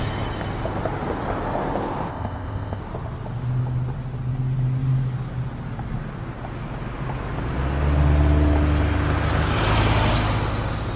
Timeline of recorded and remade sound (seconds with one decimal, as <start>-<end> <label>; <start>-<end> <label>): 0.0-2.1 recorded; 2.1-2.8 remade; 2.8-11.0 recorded